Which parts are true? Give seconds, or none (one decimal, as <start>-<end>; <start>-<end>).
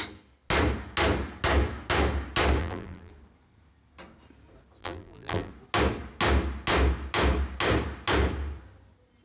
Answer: 0.0-2.6; 3.1-4.8; 5.5-9.2